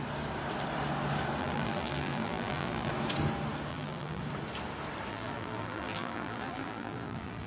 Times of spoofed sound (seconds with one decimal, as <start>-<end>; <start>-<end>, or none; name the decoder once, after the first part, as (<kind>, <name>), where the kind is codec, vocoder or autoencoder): 1.4-2.9 (vocoder, BigVGAN v2); 3.7-4.2; 5.1-7.5